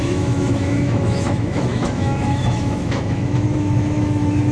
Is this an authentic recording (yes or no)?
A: no